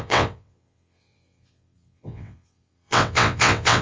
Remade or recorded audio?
remade